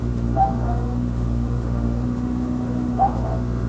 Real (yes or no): no